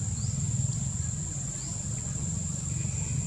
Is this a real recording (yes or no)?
yes